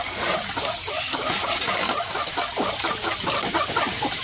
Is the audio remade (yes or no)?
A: no